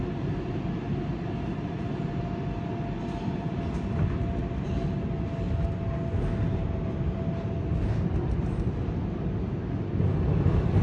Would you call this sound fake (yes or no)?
no